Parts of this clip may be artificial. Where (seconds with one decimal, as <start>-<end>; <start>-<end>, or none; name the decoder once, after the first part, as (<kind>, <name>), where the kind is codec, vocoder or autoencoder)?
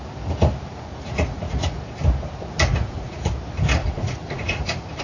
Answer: 0.9-1.8 (vocoder, Vocos); 2.7-3.3; 3.8-5.0